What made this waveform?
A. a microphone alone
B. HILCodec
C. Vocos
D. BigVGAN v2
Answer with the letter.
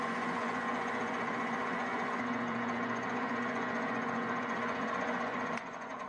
C